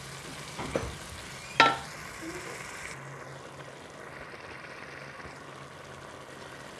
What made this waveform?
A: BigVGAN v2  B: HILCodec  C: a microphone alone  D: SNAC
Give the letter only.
C